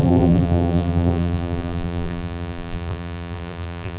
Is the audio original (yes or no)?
no